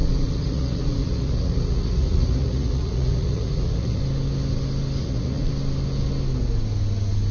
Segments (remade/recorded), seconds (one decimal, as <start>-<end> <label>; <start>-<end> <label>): 0.0-4.0 remade; 4.0-5.0 recorded; 5.0-5.5 remade; 5.5-7.3 recorded